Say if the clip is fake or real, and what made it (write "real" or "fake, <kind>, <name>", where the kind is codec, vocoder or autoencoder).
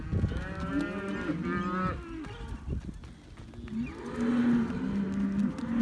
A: real